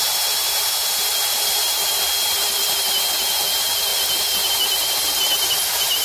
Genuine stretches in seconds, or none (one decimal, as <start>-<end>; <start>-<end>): 0.0-6.0

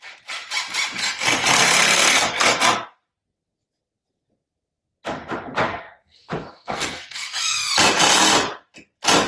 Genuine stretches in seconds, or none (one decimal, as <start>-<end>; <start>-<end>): 0.0-1.0; 2.6-5.7; 7.7-9.3

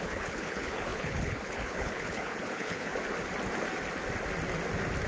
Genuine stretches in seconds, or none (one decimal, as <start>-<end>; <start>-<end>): 2.9-5.1

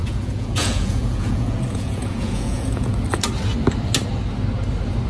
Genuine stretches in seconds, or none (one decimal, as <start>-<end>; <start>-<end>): 2.9-5.1

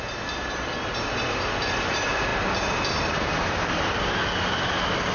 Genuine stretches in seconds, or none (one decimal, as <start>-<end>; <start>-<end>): 0.0-5.1

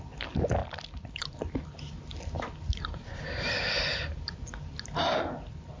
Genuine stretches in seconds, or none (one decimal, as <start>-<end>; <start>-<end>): 0.0-5.8